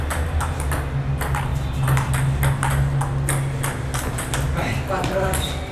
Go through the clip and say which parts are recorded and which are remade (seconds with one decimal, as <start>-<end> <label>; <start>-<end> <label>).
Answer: 0.0-5.7 recorded